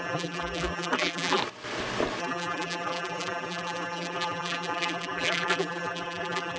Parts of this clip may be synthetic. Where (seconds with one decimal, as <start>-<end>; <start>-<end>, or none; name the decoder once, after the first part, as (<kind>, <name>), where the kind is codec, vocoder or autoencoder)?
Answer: 0.0-1.4 (vocoder, BigVGAN v2); 2.2-6.6